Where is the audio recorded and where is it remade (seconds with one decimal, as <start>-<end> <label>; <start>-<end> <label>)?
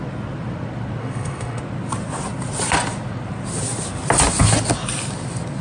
0.0-1.0 recorded; 1.0-1.6 remade; 1.6-5.6 recorded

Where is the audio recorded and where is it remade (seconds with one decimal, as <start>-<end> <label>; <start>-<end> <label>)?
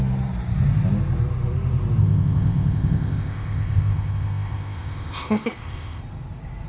0.0-2.0 recorded; 2.0-6.0 remade; 6.0-6.7 recorded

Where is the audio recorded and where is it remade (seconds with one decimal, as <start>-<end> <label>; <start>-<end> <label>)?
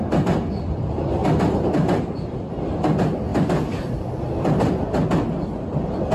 0.0-3.3 recorded; 3.3-3.8 remade; 3.8-6.1 recorded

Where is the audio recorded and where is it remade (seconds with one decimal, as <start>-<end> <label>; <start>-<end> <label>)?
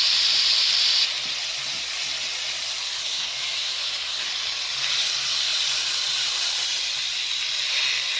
0.0-3.0 recorded; 3.0-4.3 remade; 4.3-8.2 recorded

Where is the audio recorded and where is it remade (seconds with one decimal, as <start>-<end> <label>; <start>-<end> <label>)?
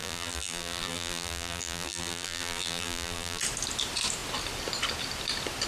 0.0-3.4 remade; 3.4-5.7 recorded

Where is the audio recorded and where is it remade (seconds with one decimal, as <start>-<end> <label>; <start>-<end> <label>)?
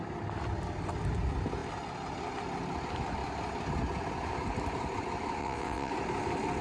0.0-5.4 recorded; 5.4-5.9 remade; 5.9-6.6 recorded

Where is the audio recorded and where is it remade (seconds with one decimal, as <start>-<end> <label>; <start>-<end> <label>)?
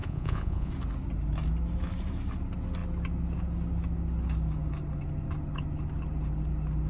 0.0-0.7 remade; 0.7-6.9 recorded